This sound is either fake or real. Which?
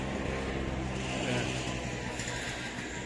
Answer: real